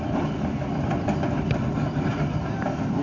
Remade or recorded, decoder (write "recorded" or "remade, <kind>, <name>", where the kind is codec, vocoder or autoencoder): recorded